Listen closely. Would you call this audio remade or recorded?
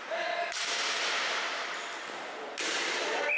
recorded